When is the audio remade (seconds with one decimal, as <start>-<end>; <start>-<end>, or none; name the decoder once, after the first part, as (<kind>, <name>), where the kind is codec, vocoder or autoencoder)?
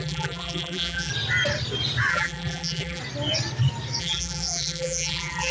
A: 0.0-1.1 (vocoder, BigVGAN v2); 2.1-3.0; 4.0-5.5